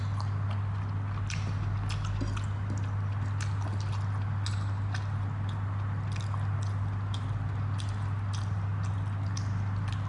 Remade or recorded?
recorded